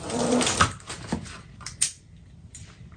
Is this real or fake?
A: fake